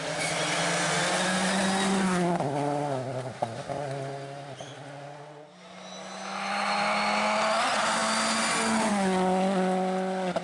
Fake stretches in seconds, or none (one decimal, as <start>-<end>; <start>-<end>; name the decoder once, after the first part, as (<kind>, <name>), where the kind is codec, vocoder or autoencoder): none